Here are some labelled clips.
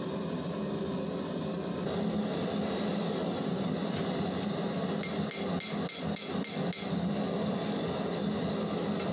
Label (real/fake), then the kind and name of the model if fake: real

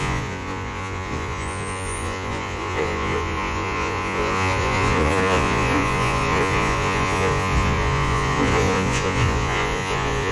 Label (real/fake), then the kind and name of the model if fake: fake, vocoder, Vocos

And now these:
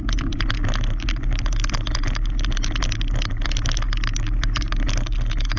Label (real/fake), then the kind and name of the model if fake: real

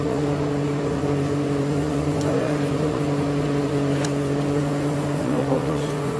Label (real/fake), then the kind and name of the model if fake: fake, vocoder, Vocos